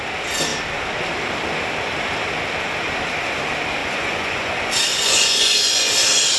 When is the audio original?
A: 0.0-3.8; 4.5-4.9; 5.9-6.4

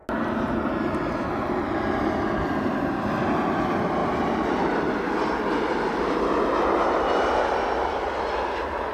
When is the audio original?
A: 0.0-8.9

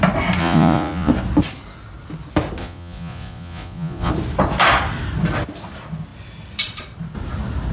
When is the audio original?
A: 0.0-0.4; 1.1-2.6; 4.1-7.7

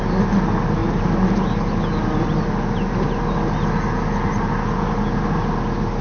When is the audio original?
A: 0.0-6.0

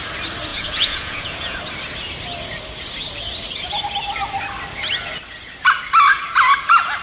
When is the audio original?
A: 0.0-0.5; 1.6-7.0

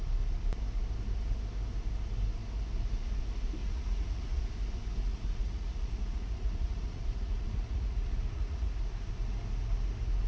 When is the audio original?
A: 0.0-3.6; 4.4-5.1; 8.7-10.3

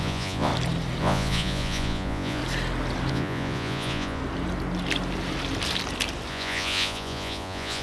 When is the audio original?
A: 0.5-1.0; 2.4-3.1; 4.2-6.3

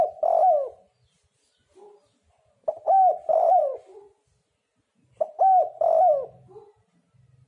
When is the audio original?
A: 0.0-3.3; 4.2-7.5